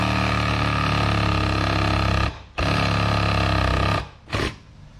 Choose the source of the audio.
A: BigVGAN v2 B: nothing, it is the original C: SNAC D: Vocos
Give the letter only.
B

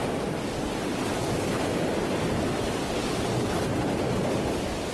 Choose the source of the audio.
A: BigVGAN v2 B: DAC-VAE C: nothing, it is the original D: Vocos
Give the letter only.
C